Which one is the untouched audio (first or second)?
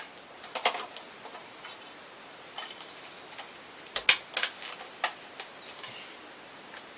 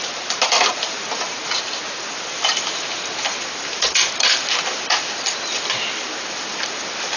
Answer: first